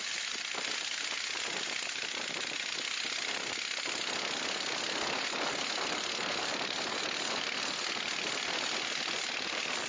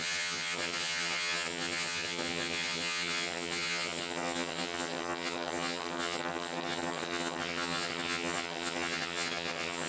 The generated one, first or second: second